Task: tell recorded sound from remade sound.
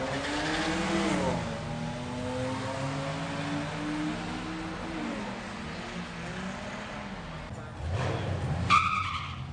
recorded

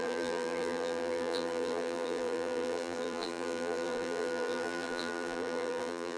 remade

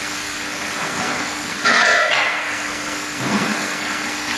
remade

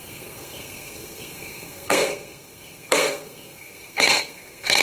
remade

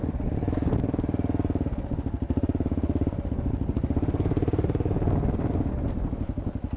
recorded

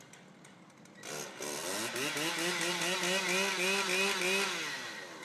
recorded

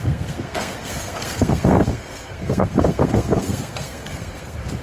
remade